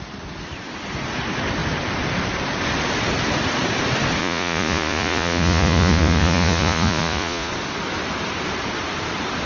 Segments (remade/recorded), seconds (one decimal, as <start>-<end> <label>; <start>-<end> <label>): 0.0-4.2 recorded; 4.2-7.5 remade; 7.5-9.5 recorded